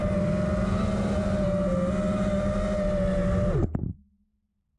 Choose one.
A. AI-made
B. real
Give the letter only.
B